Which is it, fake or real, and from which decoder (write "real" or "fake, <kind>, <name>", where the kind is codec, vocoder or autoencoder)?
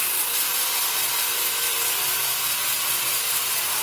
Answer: real